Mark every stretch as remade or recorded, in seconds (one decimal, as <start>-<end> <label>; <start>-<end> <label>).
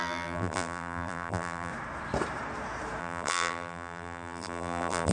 0.0-1.7 remade; 1.7-3.0 recorded; 3.0-5.1 remade